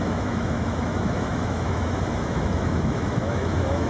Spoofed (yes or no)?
yes